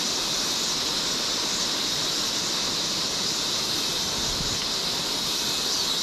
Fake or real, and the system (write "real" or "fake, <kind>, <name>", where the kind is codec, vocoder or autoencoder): real